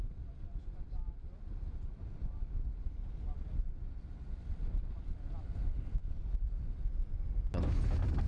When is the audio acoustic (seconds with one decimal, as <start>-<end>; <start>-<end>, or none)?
0.0-8.3